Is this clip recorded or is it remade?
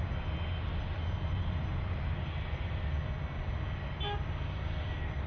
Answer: recorded